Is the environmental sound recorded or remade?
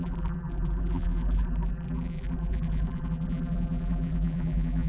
remade